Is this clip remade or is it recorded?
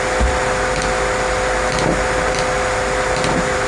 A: recorded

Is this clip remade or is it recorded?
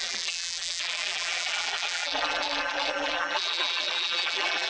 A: remade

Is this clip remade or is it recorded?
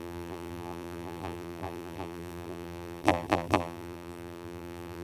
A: remade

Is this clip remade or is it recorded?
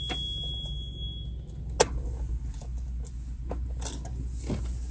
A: recorded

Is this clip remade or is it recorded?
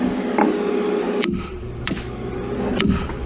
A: recorded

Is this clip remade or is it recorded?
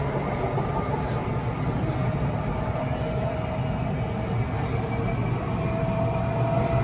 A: recorded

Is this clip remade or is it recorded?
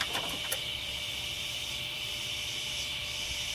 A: remade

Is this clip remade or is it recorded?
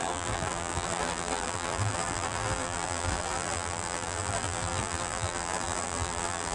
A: remade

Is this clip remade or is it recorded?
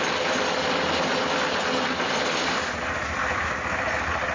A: recorded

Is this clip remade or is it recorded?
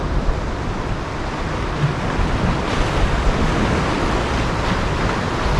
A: recorded